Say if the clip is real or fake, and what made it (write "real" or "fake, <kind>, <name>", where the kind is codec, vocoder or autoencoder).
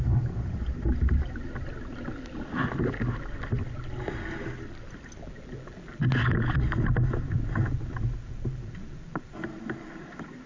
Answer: real